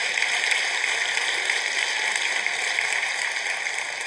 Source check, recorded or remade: remade